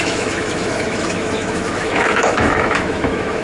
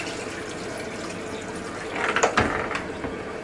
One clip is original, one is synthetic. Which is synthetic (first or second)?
first